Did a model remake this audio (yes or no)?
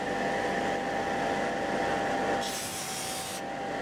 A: no